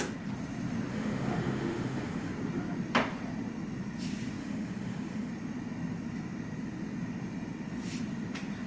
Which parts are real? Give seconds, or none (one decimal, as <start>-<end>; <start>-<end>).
0.0-0.9; 2.3-4.4; 5.3-8.7